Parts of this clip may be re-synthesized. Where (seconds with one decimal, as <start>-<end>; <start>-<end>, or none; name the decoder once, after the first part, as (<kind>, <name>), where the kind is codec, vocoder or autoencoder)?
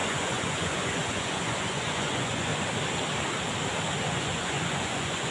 0.0-2.5 (vocoder, Vocos); 4.0-5.3